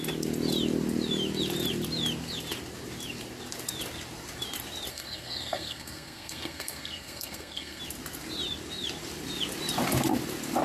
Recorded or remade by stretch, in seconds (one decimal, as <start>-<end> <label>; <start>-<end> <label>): 0.0-4.9 recorded; 4.9-7.8 remade; 7.8-10.6 recorded